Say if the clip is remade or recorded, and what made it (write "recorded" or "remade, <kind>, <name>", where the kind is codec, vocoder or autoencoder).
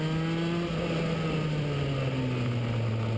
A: recorded